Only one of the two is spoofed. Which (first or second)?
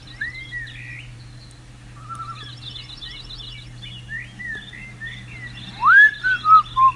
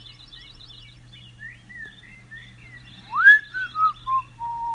second